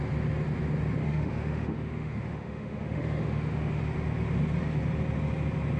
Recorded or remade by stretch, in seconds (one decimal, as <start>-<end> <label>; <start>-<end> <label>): 0.0-1.0 recorded; 1.0-3.8 remade; 3.8-5.8 recorded